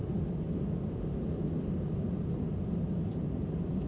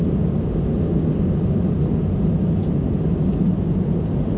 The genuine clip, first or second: second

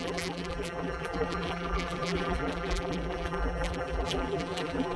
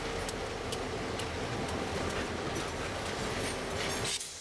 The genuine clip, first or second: second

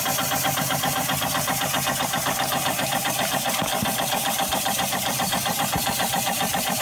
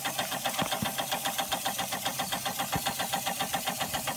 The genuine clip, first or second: second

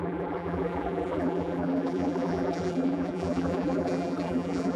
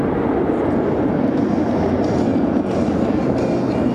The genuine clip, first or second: second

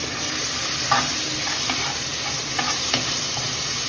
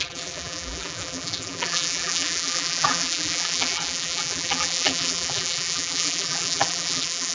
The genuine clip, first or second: first